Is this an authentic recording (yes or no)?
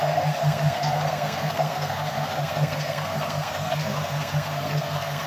no